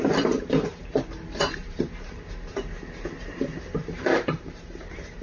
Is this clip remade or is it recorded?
remade